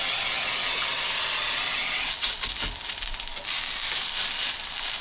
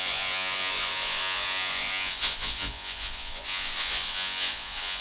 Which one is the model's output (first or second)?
second